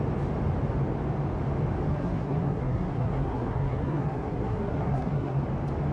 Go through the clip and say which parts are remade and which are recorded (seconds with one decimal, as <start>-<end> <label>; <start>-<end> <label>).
0.0-1.9 recorded; 1.9-5.4 remade; 5.4-5.9 recorded